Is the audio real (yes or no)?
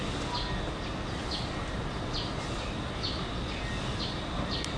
yes